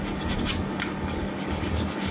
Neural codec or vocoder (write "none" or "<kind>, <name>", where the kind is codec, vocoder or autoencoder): codec, DAC